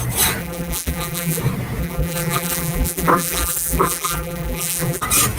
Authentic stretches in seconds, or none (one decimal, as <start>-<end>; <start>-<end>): 0.0-0.4; 1.4-1.8; 5.0-5.4